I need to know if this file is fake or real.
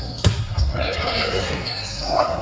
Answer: fake